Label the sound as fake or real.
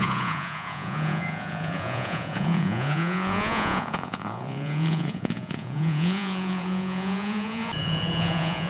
fake